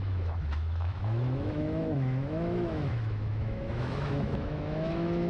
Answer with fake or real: fake